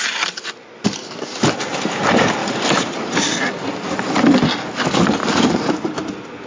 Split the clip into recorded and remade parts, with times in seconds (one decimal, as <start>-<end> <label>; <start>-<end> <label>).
0.0-1.0 recorded; 1.0-1.5 remade; 1.5-2.4 recorded; 2.4-4.1 remade; 4.1-5.2 recorded; 5.2-6.0 remade; 6.0-6.5 recorded